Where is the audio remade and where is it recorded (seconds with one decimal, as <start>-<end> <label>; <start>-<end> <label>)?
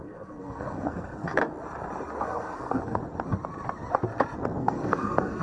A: 0.0-1.4 remade; 1.4-2.2 recorded; 2.2-3.0 remade; 3.0-4.6 recorded; 4.6-5.4 remade